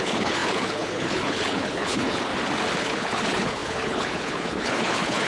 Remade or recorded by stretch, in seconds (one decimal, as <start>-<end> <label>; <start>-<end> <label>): 0.0-2.3 remade; 2.3-2.8 recorded; 2.8-5.3 remade